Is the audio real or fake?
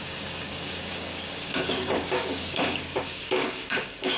fake